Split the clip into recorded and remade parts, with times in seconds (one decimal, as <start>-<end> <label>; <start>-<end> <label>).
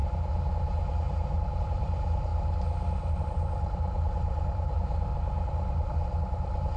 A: 0.0-1.6 recorded; 1.6-2.3 remade; 2.3-3.2 recorded; 3.2-5.1 remade; 5.1-6.8 recorded